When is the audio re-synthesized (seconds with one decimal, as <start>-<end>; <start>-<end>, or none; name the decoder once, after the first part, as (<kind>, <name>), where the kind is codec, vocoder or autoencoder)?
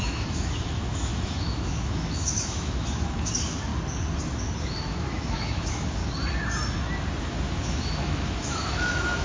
0.0-3.7 (autoencoder, DAC-VAE); 4.6-6.0; 7.2-9.2